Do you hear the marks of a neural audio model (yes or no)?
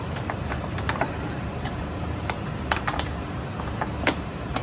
yes